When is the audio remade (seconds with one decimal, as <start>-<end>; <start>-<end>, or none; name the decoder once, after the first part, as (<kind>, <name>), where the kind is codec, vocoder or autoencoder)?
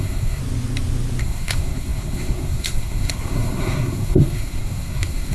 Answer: 0.0-0.4 (codec, SNAC); 1.2-5.3